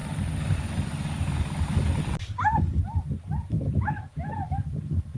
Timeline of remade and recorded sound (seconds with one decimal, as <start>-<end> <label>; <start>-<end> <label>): 0.0-5.2 remade